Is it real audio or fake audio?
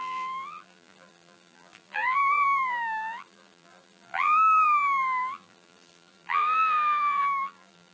fake